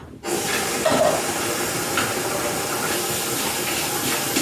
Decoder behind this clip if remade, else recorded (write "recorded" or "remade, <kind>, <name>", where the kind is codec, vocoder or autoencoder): recorded